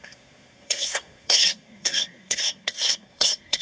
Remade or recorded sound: remade